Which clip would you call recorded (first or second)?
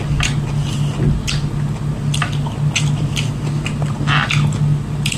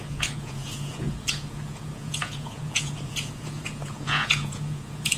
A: first